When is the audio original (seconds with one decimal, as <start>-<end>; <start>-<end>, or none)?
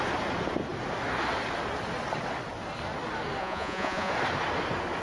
0.0-3.4; 4.1-5.0